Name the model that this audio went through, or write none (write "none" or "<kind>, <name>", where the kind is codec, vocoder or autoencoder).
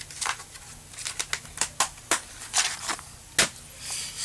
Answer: none